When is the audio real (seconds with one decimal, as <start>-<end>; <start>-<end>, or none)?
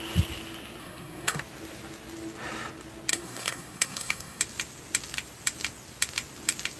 0.0-0.8; 1.4-3.1; 4.4-6.8